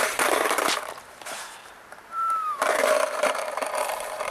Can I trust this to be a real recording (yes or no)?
no